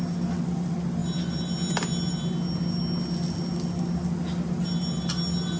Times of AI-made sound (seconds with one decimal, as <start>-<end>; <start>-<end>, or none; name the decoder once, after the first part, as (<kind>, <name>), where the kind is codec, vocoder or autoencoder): none